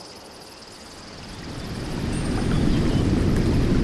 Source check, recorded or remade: recorded